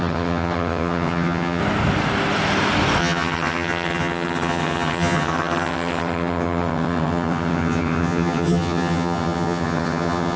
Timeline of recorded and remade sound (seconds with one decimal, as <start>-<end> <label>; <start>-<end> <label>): 0.0-1.6 remade; 1.6-3.0 recorded; 3.0-10.4 remade